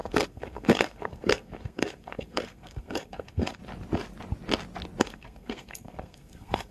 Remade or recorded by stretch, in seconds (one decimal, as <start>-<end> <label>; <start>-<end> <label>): 0.0-3.6 remade; 3.6-5.0 recorded; 5.0-6.7 remade